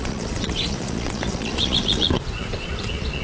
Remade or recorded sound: remade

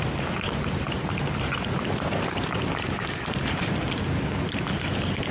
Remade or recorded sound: recorded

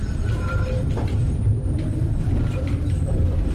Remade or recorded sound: remade